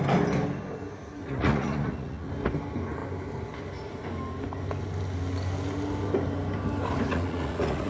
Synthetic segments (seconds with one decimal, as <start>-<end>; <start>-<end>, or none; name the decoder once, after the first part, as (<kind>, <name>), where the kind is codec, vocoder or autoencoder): 1.2-2.3 (vocoder, Vocos); 7.1-7.9